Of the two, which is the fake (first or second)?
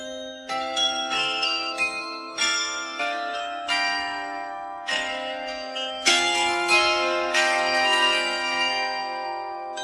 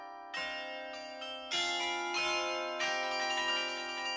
first